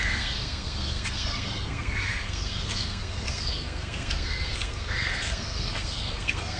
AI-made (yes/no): yes